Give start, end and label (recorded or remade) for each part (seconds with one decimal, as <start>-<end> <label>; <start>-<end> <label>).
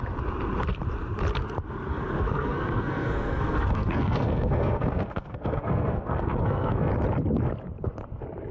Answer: 0.0-1.9 recorded; 1.9-6.9 remade; 6.9-8.5 recorded